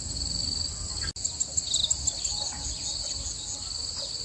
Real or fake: real